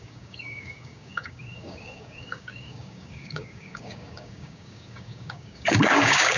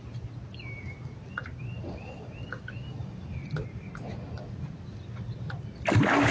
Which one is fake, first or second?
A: first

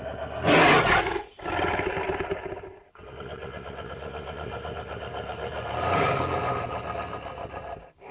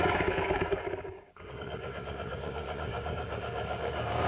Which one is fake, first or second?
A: second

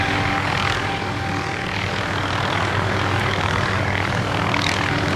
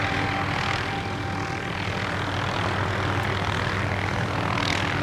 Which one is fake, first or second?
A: first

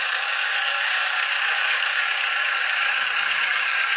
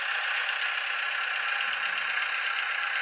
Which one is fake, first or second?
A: first